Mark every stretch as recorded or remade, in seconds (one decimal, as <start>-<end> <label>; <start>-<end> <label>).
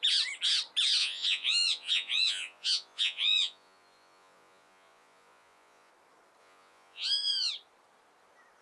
0.0-1.0 recorded; 1.0-5.9 remade; 5.9-6.4 recorded; 6.4-7.5 remade; 7.5-8.6 recorded